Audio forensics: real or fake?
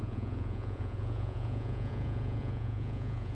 fake